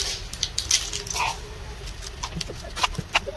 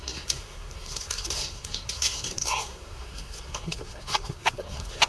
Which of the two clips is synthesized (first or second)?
second